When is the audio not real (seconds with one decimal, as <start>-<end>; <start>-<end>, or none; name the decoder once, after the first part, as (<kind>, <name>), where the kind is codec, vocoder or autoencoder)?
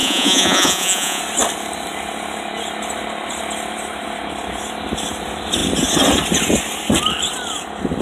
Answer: 0.0-1.2 (vocoder, Vocos)